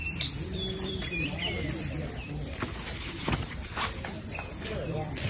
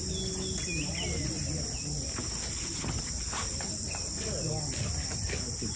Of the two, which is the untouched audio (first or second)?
second